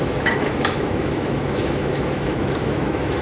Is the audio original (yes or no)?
no